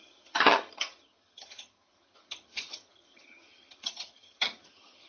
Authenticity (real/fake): fake